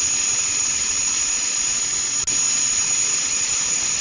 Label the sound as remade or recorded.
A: recorded